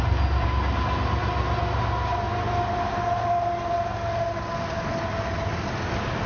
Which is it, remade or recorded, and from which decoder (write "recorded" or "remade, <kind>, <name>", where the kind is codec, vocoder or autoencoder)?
recorded